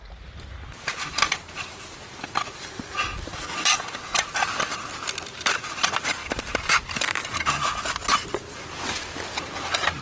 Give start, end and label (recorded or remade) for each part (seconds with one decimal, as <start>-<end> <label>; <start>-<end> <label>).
0.0-10.0 recorded